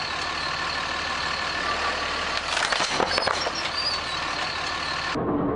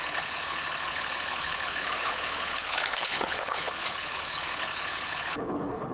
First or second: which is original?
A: first